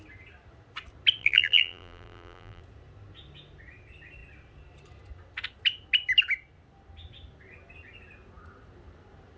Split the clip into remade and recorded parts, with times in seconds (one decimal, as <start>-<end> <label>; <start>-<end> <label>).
0.0-1.2 recorded; 1.2-2.6 remade; 2.6-9.4 recorded